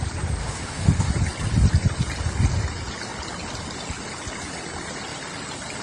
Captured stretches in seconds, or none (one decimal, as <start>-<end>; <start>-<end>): 0.0-0.4; 1.1-5.8